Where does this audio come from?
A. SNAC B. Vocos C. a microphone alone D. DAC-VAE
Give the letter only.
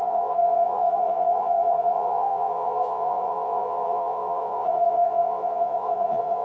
B